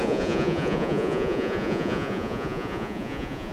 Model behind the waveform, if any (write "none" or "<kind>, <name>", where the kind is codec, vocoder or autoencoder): vocoder, Vocos